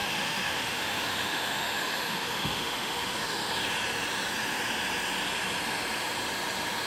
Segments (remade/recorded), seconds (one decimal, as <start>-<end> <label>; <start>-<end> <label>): 0.0-3.5 remade; 3.5-6.9 recorded